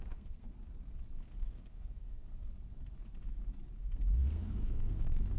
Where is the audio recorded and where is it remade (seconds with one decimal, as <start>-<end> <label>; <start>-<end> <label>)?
0.0-0.5 remade; 0.5-1.4 recorded; 1.4-2.3 remade; 2.3-3.8 recorded; 3.8-5.4 remade